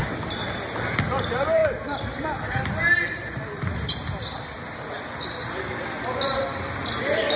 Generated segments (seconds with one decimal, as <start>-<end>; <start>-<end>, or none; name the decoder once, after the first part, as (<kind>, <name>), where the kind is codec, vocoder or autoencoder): none